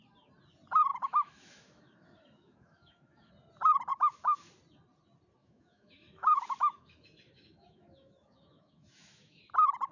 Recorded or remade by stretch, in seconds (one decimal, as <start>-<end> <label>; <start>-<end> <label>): 0.0-0.9 recorded; 0.9-3.3 remade; 3.3-3.9 recorded; 3.9-4.5 remade; 4.5-5.4 recorded; 5.4-9.4 remade; 9.4-9.9 recorded